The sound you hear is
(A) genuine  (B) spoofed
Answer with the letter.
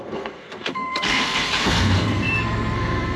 B